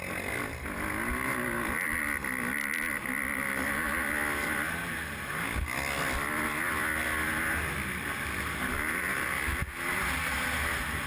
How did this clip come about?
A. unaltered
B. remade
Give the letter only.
A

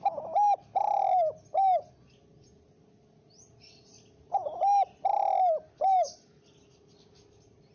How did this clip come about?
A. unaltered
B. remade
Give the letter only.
A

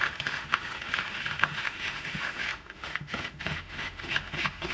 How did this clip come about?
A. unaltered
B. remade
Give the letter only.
B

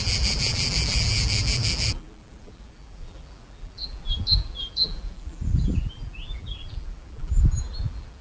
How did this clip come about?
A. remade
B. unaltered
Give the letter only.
A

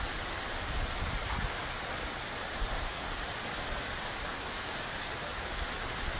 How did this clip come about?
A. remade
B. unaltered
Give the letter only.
B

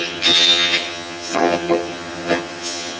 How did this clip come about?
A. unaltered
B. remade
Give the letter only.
B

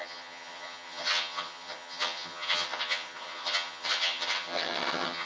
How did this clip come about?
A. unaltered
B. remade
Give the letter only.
B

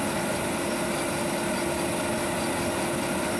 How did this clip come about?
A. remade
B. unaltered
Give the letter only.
B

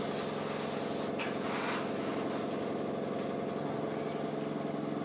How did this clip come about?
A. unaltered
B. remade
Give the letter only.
A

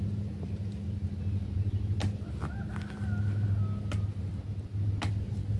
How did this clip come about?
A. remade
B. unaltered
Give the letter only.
B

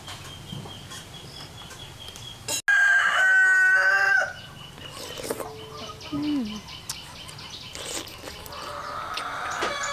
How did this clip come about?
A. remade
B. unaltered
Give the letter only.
B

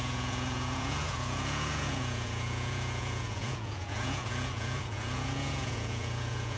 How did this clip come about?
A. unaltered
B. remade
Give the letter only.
B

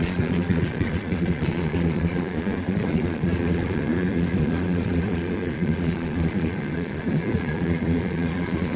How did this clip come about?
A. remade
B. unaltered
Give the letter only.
A